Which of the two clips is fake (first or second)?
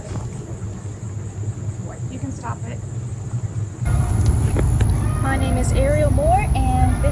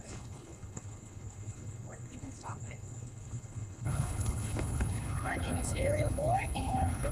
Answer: second